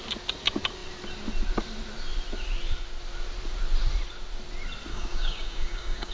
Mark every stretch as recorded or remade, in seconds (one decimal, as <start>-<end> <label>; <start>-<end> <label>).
0.0-4.9 recorded; 4.9-6.1 remade